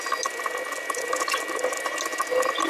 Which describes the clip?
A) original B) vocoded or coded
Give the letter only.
A